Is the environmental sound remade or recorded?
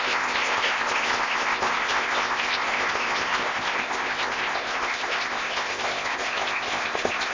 remade